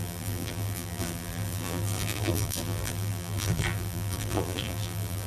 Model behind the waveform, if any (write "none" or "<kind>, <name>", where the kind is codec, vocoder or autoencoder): vocoder, BigVGAN v2